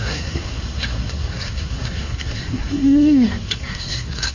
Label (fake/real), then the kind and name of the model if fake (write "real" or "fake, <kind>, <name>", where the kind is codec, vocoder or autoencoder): fake, codec, SNAC